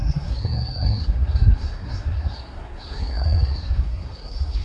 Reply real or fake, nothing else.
fake